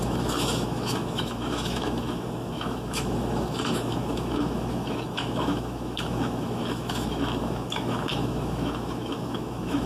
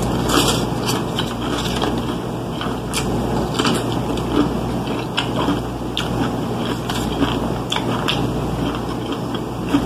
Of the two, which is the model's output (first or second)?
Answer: first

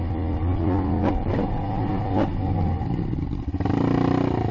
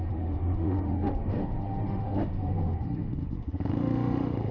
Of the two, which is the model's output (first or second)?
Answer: second